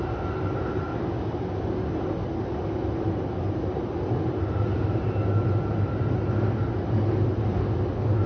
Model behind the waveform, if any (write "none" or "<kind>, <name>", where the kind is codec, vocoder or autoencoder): none